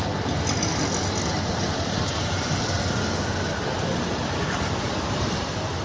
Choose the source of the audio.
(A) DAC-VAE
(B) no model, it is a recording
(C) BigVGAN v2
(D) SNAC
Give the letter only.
B